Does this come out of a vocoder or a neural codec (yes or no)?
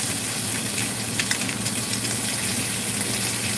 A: no